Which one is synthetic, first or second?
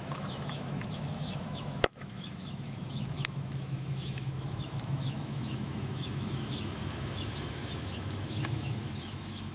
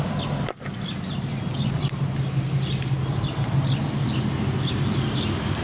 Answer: first